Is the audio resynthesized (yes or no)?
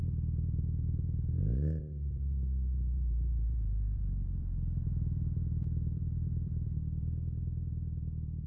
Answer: yes